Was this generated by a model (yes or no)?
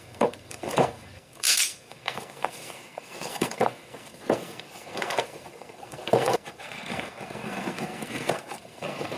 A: yes